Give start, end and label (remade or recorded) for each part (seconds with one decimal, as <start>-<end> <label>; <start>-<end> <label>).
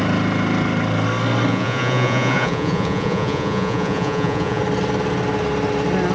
0.0-1.5 recorded; 1.5-4.6 remade; 4.6-6.1 recorded